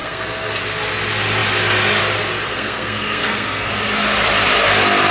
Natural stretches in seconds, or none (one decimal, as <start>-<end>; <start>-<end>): 0.6-2.5; 3.7-5.1